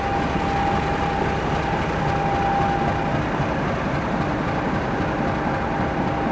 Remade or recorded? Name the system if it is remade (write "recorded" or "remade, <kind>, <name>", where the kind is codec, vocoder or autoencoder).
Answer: recorded